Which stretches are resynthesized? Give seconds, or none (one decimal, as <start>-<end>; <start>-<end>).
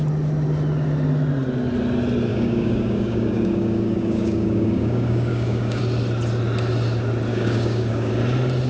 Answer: 2.3-5.8; 7.3-8.1